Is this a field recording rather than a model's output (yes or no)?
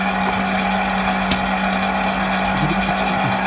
yes